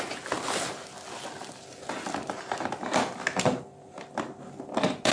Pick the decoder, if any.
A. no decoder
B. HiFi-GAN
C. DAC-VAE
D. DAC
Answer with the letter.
A